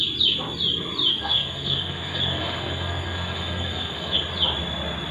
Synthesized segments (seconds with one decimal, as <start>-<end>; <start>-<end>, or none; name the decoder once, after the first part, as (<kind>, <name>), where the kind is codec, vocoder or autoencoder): 1.1-4.2 (codec, SNAC)